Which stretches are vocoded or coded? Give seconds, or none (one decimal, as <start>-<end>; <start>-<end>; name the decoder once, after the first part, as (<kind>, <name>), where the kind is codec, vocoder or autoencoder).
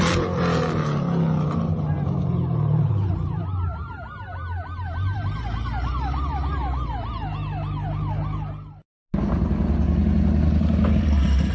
2.2-7.1 (vocoder, BigVGAN v2)